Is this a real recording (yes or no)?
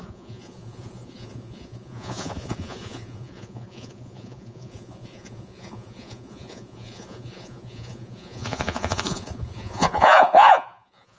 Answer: no